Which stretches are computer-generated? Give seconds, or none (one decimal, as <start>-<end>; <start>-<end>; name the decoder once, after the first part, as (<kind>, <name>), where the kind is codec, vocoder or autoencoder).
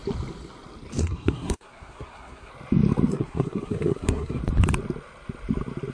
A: 1.0-2.5 (codec, SNAC); 3.1-4.4